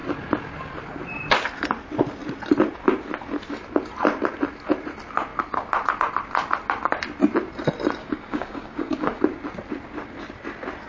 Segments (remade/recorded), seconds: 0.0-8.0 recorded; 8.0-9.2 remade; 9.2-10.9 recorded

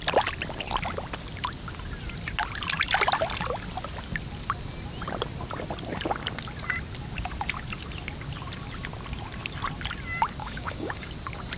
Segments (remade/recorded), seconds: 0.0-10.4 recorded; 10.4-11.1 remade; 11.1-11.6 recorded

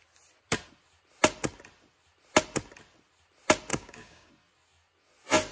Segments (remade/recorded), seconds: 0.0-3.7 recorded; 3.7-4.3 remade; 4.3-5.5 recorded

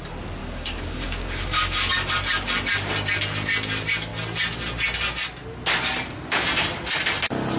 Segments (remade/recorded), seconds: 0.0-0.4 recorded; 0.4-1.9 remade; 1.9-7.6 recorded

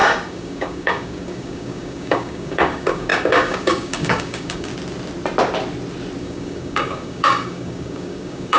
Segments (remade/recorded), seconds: 0.0-4.7 remade; 4.7-6.2 recorded; 6.2-8.6 remade

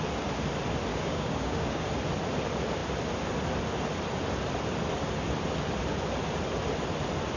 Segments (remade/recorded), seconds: 0.0-0.9 recorded; 0.9-1.9 remade; 1.9-7.4 recorded

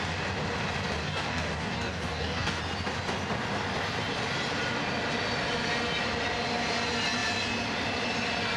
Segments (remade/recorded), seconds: 0.0-1.0 recorded; 1.0-2.6 remade; 2.6-8.6 recorded